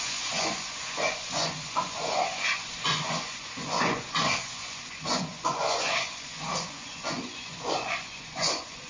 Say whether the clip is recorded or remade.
remade